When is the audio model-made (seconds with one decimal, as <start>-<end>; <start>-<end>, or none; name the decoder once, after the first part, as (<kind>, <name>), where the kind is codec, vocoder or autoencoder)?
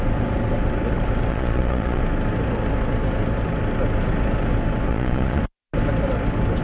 1.3-2.0 (vocoder, Vocos); 4.9-5.4